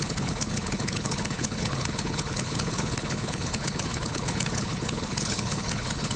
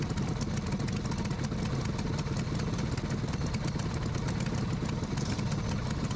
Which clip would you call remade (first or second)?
first